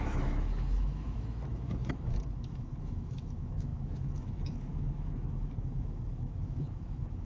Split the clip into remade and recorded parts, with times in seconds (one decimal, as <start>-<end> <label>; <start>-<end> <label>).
0.0-7.3 remade